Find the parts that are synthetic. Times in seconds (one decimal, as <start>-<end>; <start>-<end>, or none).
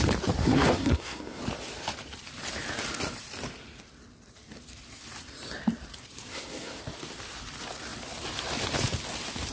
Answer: 0.4-1.4; 6.3-6.8